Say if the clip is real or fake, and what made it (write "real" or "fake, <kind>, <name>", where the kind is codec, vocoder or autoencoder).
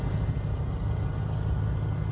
real